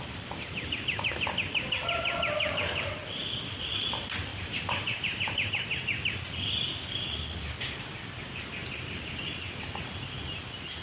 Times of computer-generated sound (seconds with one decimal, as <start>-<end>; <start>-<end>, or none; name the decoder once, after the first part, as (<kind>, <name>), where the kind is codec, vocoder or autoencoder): 4.3-5.5 (vocoder, BigVGAN v2)